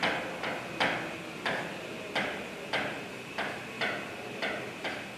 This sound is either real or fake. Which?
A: real